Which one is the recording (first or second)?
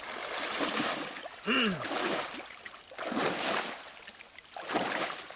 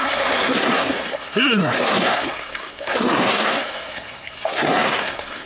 first